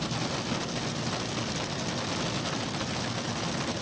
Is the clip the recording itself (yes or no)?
yes